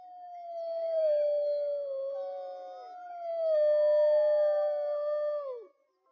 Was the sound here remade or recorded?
recorded